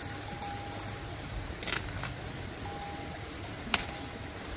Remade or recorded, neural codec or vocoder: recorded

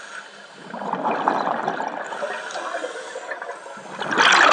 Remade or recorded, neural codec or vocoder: recorded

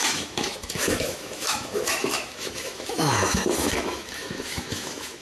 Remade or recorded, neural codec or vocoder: remade, autoencoder, DAC-VAE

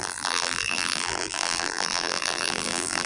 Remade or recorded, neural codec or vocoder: remade, vocoder, BigVGAN v2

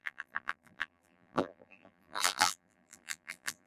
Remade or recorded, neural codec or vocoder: remade, vocoder, BigVGAN v2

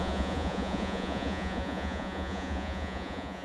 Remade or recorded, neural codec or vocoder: remade, vocoder, Vocos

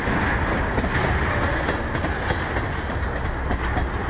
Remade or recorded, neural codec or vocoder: recorded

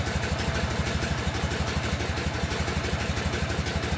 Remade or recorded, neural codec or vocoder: recorded